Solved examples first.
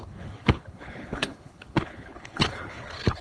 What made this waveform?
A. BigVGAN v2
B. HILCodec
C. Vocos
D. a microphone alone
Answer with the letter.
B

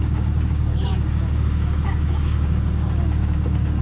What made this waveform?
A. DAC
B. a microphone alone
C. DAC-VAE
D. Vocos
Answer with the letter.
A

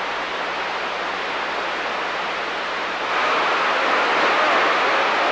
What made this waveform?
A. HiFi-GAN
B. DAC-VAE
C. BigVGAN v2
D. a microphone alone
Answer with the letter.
D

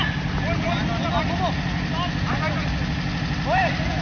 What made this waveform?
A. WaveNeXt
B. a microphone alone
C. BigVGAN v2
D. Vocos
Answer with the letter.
B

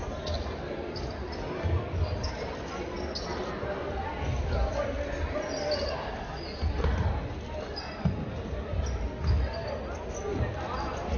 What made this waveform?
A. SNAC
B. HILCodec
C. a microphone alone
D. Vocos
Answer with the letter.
C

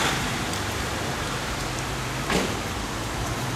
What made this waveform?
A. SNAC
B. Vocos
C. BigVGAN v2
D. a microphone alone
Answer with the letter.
D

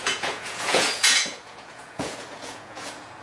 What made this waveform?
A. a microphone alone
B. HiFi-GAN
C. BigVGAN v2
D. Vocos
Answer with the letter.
D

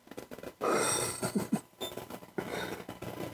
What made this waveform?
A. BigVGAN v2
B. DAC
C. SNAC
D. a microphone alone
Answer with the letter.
D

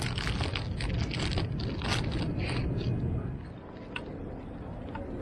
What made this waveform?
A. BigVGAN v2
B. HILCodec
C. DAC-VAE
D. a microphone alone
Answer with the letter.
D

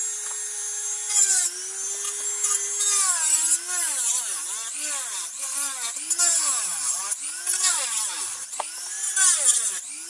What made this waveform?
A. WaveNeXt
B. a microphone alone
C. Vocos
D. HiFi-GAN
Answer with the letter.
B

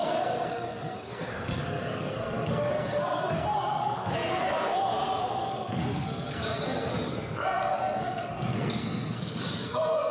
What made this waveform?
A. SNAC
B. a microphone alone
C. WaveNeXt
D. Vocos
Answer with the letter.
A